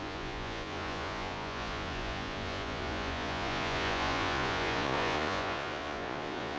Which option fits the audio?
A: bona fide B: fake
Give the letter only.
B